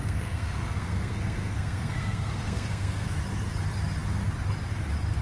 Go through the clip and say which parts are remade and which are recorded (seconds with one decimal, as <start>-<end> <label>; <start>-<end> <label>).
0.0-3.1 remade; 3.1-5.2 recorded